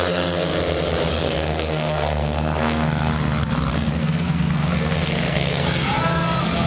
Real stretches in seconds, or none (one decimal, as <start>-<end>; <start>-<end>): 0.5-1.1; 3.1-3.7